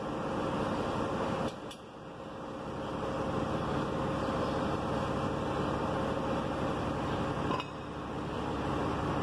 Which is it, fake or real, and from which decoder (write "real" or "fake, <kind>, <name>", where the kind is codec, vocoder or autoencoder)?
real